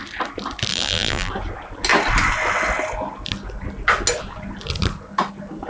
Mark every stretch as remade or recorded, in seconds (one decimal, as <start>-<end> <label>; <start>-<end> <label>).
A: 0.0-0.7 recorded; 0.7-1.3 remade; 1.3-5.7 recorded

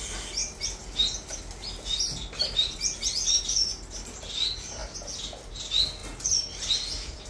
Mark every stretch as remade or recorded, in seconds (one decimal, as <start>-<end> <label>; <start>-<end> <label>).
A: 0.0-7.3 recorded

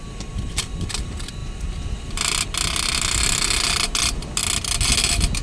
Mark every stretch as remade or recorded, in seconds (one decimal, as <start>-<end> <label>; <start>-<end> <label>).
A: 0.0-5.4 recorded